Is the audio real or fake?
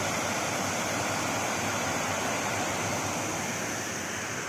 real